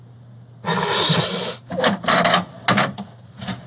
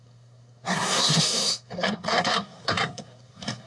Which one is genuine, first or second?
first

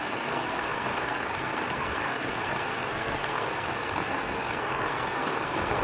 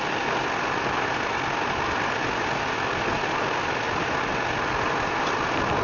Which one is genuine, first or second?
second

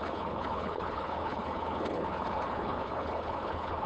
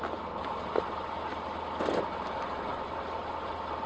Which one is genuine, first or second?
second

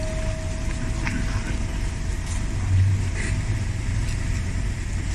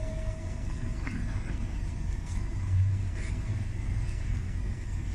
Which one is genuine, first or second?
first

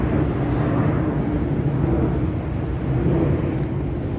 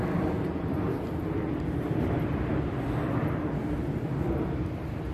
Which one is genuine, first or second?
first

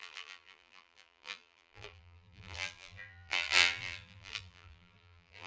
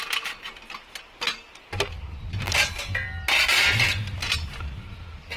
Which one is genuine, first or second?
second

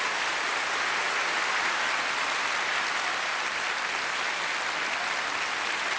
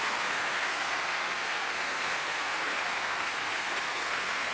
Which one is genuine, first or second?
first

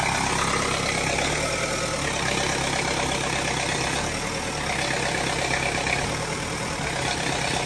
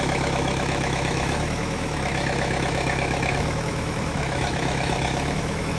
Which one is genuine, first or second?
first